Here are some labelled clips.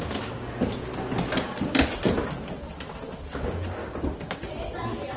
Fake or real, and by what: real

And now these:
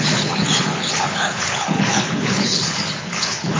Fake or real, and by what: fake, codec, HILCodec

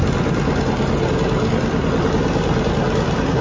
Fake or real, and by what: real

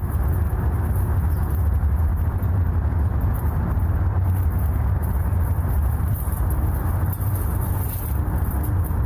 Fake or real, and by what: real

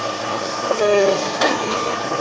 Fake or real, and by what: fake, codec, SNAC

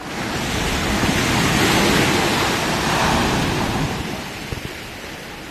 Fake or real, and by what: real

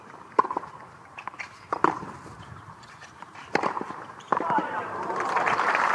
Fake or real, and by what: fake, vocoder, BigVGAN v2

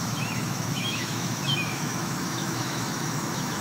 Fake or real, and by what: fake, autoencoder, DAC-VAE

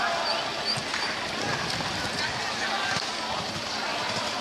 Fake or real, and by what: real